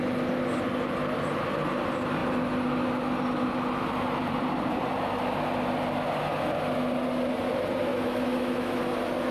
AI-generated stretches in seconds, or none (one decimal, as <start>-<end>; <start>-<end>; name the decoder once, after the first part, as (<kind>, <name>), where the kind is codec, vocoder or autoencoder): 7.9-8.8 (autoencoder, DAC-VAE)